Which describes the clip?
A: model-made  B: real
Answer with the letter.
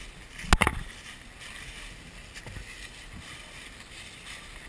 B